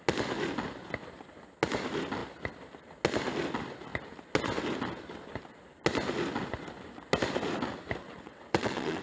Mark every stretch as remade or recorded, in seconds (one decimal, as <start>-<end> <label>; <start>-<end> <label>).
0.0-8.0 recorded; 8.0-9.0 remade